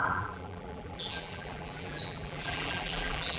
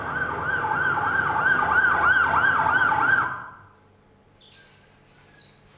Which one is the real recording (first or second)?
second